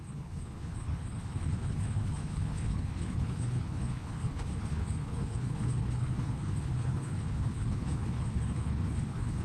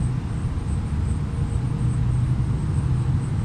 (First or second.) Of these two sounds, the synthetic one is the first